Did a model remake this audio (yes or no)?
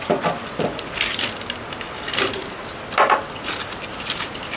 no